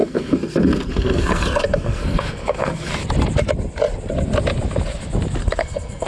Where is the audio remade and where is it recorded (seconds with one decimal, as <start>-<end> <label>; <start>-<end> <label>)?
0.0-2.9 remade; 2.9-5.4 recorded; 5.4-6.1 remade